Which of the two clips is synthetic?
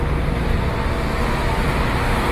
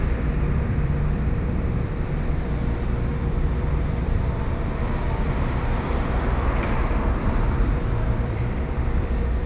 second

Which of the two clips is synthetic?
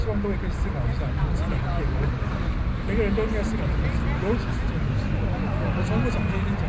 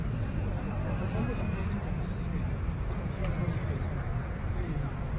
second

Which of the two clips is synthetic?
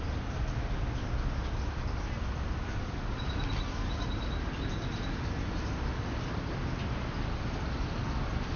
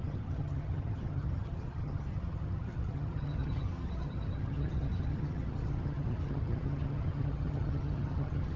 second